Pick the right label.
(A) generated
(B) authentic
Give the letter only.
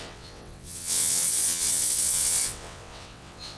A